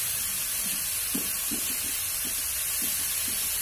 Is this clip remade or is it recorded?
recorded